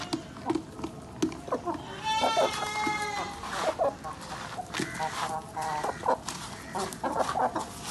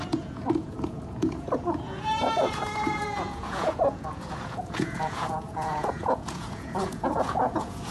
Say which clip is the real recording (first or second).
first